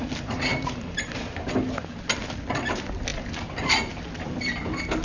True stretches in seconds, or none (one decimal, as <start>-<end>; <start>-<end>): 0.0-5.0